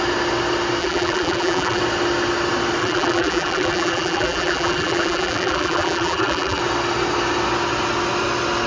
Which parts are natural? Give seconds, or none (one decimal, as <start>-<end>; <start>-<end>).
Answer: 0.0-0.8; 1.8-2.8; 6.6-8.7